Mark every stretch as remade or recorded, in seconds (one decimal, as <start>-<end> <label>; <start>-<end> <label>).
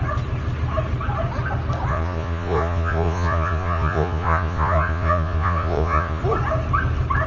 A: 0.0-1.9 recorded; 1.9-6.2 remade; 6.2-7.3 recorded